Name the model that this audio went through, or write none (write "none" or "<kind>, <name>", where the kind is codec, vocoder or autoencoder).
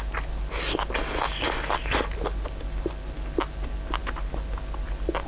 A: none